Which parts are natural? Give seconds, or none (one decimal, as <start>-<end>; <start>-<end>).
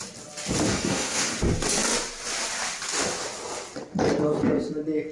0.0-0.7; 1.3-5.1